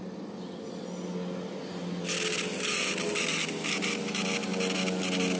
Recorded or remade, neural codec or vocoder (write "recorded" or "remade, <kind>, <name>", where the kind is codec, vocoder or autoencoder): recorded